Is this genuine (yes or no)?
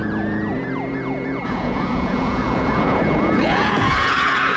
no